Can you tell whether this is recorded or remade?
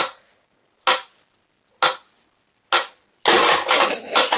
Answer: recorded